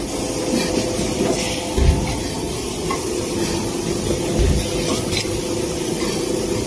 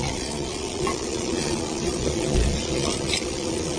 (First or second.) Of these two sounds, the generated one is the second